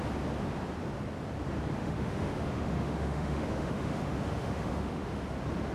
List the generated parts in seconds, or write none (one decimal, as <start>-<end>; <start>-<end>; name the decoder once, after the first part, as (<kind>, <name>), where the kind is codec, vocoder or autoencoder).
1.8-5.2 (autoencoder, DAC-VAE)